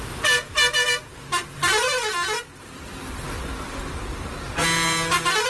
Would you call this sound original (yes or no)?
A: no